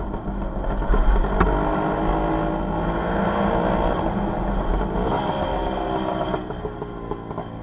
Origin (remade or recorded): recorded